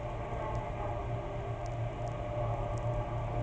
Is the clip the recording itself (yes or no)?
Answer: yes